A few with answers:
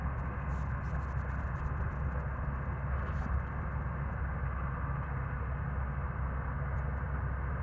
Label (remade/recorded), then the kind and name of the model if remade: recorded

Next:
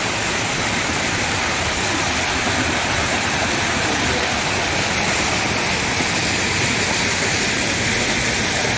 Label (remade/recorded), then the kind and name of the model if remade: recorded